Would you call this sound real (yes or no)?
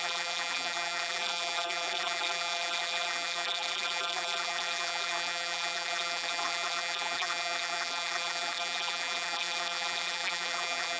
no